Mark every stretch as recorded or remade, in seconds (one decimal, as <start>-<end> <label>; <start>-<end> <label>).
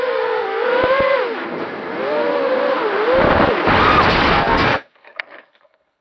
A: 0.0-0.7 remade; 0.7-4.3 recorded; 4.3-6.0 remade